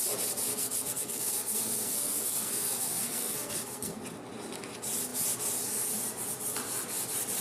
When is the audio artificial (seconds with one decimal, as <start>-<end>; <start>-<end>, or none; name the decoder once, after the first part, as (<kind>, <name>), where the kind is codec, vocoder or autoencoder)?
0.5-4.0 (codec, SNAC)